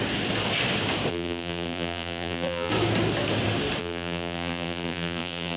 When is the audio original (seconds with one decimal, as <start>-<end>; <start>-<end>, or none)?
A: 0.0-1.1; 2.7-3.8

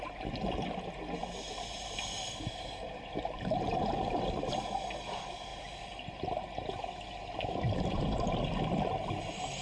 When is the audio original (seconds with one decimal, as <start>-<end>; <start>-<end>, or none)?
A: 0.0-1.2; 4.9-9.6

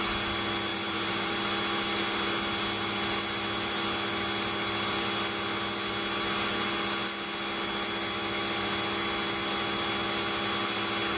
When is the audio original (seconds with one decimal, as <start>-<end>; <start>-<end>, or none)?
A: 0.0-0.7; 1.3-11.2

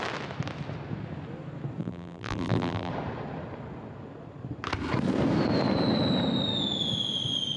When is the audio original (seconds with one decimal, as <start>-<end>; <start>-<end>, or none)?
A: 0.0-1.8; 2.9-7.6

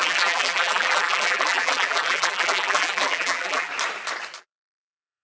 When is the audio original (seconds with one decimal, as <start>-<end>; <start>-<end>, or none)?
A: 3.7-4.4

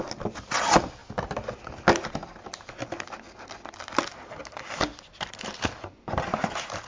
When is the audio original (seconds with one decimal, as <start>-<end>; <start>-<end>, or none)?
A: 0.0-4.9

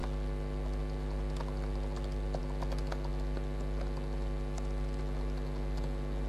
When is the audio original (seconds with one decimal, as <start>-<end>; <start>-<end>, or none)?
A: 0.0-6.3

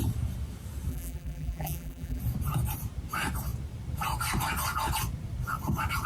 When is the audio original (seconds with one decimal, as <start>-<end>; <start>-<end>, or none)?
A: 0.0-0.9; 2.2-6.1